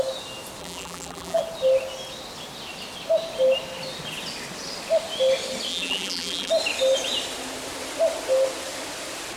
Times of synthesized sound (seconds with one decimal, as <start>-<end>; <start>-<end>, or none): 0.6-1.4; 5.7-6.5